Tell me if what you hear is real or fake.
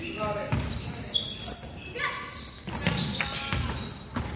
real